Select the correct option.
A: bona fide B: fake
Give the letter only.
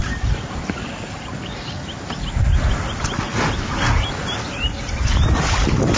A